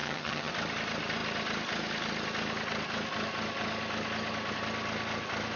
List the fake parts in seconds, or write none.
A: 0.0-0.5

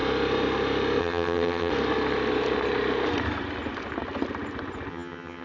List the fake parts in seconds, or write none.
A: 1.0-1.7; 4.9-5.4

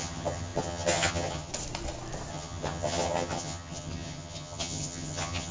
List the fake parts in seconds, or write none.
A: 0.0-1.5; 2.3-5.5

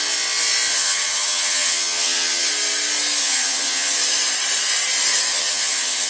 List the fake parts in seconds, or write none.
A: 0.7-2.5; 3.2-4.0; 5.3-6.1

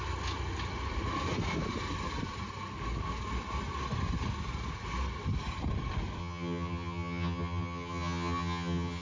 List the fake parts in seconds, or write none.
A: 6.2-9.0

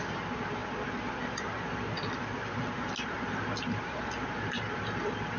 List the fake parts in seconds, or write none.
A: none